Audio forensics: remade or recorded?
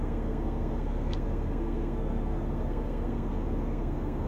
remade